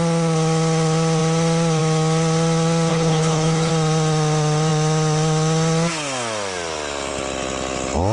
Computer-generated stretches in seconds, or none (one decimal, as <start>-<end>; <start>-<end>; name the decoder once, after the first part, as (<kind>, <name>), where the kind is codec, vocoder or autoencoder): 2.9-3.7 (codec, HILCodec)